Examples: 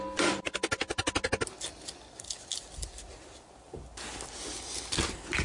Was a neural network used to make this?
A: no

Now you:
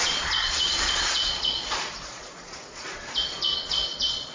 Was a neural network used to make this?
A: yes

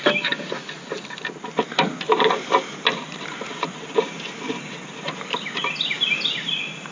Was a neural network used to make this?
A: no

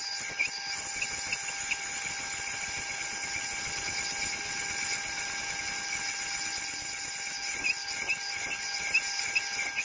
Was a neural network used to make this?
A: no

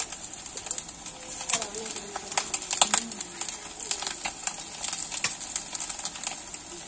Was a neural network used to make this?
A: no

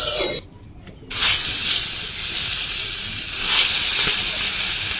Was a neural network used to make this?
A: no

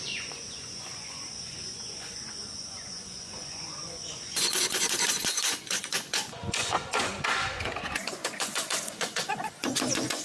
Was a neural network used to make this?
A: yes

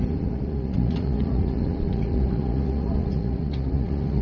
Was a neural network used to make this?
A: yes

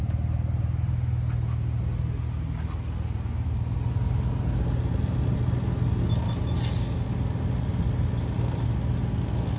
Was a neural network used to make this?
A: no